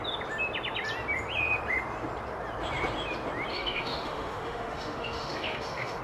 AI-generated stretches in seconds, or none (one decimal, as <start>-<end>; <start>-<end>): 3.5-6.0